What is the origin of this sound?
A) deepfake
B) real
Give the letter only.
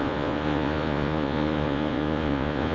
A